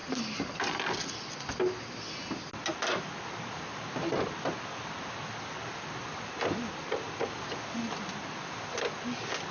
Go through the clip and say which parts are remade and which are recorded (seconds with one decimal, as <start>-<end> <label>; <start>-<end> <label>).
0.0-9.5 recorded